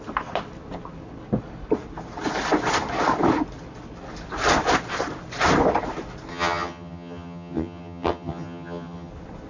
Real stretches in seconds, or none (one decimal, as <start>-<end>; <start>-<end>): 0.0-6.3; 9.1-9.5